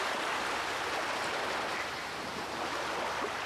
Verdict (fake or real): real